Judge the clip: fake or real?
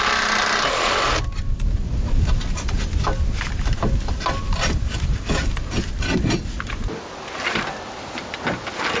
real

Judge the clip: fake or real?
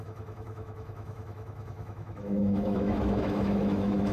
fake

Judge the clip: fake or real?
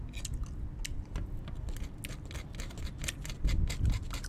real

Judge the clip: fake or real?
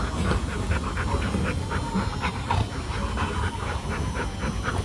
real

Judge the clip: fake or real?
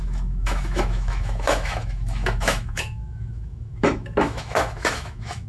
fake